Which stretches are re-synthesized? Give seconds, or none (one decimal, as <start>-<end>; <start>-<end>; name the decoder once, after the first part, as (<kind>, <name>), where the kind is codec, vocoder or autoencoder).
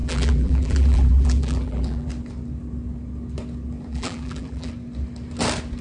0.0-2.1 (vocoder, BigVGAN v2); 3.9-4.7